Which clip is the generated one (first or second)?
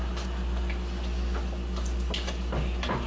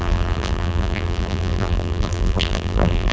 second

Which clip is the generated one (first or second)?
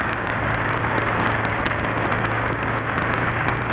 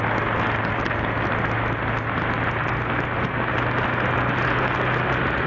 first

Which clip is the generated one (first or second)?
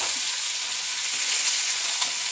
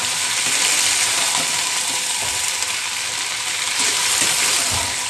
first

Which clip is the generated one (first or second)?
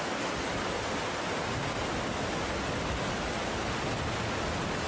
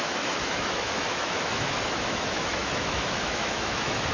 second